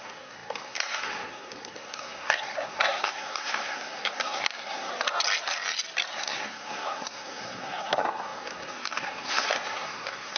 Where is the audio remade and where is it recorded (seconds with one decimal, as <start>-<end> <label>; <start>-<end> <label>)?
0.0-4.9 remade; 4.9-6.1 recorded; 6.1-10.4 remade